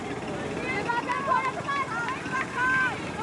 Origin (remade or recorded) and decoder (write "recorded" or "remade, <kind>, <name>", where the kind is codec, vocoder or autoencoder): recorded